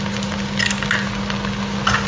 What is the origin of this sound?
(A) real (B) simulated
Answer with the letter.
A